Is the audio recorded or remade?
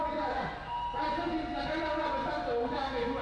recorded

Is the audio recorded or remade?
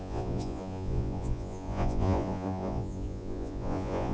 remade